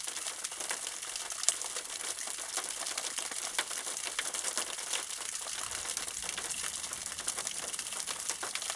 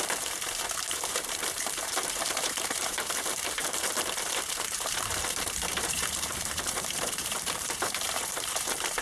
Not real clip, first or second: second